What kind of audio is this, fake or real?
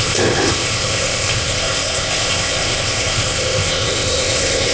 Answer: fake